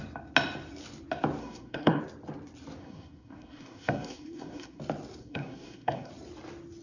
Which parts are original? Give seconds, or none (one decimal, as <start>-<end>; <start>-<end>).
0.0-1.4; 2.0-2.8; 4.8-5.2; 6.1-6.8